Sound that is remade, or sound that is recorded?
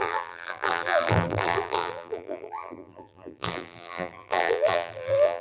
remade